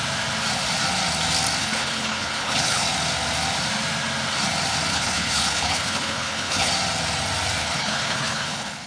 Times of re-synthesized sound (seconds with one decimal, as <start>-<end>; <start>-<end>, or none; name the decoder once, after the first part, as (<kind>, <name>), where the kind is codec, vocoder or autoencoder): 1.6-2.9 (codec, HILCodec); 4.9-6.7; 7.6-8.9